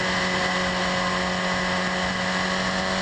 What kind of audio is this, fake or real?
real